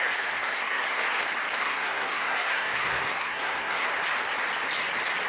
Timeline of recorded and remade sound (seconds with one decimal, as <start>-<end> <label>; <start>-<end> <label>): 0.0-1.0 remade; 1.0-1.6 recorded; 1.6-3.9 remade; 3.9-5.3 recorded